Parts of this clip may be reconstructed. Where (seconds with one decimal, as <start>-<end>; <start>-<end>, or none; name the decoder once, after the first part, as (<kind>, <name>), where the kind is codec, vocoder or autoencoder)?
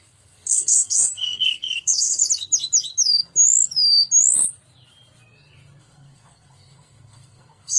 0.0-2.2 (codec, SNAC); 5.8-7.8